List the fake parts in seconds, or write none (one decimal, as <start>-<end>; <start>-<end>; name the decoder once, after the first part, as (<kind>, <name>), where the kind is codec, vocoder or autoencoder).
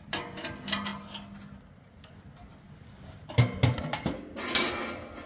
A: none